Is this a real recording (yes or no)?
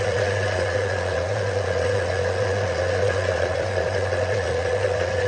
no